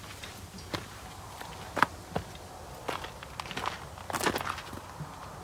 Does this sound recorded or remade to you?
recorded